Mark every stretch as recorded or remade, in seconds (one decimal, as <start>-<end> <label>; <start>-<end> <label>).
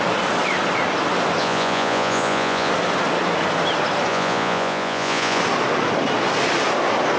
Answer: 0.0-1.4 recorded; 1.4-2.7 remade; 2.7-4.1 recorded; 4.1-5.4 remade; 5.4-7.2 recorded